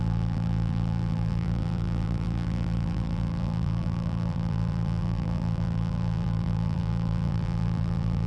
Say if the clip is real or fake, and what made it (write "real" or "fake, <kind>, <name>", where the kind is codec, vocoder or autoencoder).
fake, vocoder, BigVGAN v2